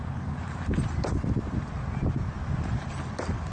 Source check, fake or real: real